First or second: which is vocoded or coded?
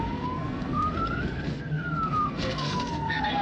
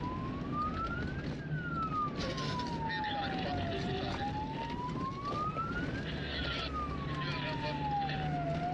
first